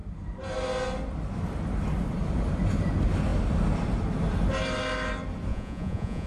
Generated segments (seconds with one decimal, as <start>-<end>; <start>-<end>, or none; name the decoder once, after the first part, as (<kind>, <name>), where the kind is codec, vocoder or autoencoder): 5.5-6.3 (vocoder, Vocos)